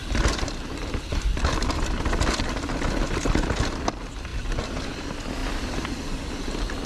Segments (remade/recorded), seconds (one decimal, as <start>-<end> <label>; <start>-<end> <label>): 0.0-6.9 recorded

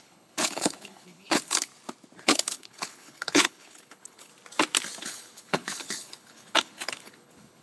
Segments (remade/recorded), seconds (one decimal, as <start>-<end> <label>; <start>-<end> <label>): 0.0-1.7 remade; 1.7-2.2 recorded; 2.2-4.3 remade; 4.3-5.0 recorded; 5.0-7.6 remade

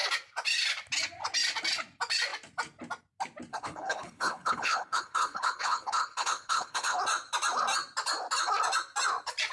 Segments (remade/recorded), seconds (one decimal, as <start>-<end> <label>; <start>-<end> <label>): 0.0-3.5 recorded; 3.5-7.0 remade; 7.0-9.5 recorded

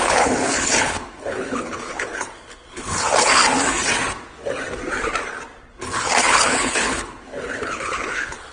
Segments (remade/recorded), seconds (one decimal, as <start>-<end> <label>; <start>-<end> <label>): 0.0-3.4 remade; 3.4-5.7 recorded; 5.7-8.5 remade

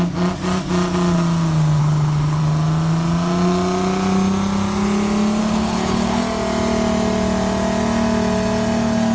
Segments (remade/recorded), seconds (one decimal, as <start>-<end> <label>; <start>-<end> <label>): 0.0-1.8 recorded; 1.8-2.4 remade; 2.4-5.4 recorded; 5.4-6.2 remade; 6.2-9.1 recorded

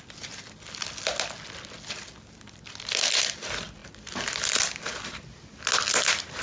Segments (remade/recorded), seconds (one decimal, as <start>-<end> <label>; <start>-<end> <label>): 0.0-6.4 recorded